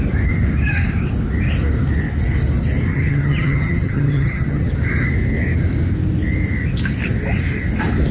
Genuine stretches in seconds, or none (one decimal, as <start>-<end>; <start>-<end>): 0.0-2.9; 4.7-8.1